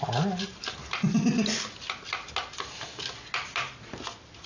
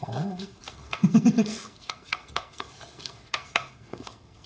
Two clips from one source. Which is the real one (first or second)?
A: first